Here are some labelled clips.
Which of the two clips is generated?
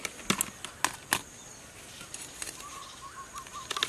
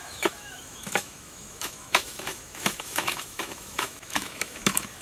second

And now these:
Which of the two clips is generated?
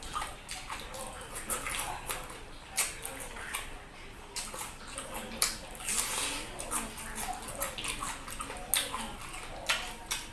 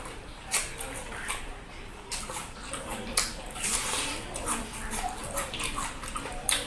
second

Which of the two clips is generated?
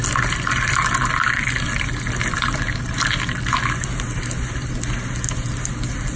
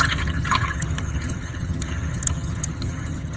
second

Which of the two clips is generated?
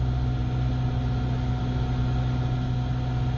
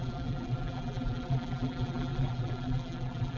second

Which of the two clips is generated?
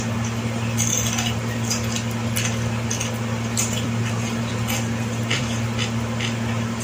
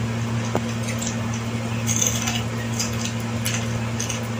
first